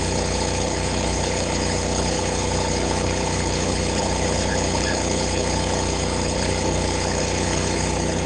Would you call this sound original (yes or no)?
no